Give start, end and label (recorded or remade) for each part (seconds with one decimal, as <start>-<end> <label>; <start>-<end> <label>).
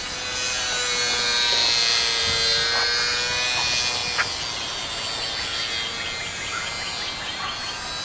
0.0-8.0 recorded